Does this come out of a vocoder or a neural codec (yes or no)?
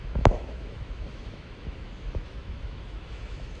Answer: yes